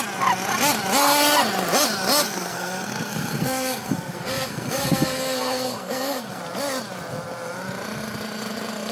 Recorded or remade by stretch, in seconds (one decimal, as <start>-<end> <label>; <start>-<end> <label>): 0.0-2.2 recorded; 2.2-6.4 remade; 6.4-8.9 recorded

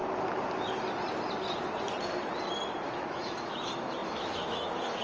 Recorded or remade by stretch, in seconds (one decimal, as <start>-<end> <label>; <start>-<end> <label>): 0.0-3.0 recorded; 3.0-5.0 remade

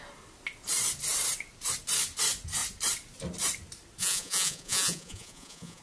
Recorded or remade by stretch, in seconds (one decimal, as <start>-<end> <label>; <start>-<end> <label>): 0.0-4.0 recorded; 4.0-5.8 remade

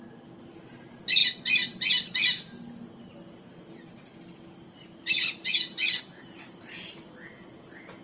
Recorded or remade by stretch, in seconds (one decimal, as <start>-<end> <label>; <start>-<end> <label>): 0.0-8.0 recorded

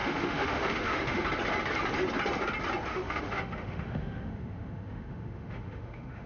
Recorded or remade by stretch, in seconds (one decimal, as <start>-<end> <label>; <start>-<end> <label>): 0.0-1.2 remade; 1.2-2.9 recorded; 2.9-6.3 remade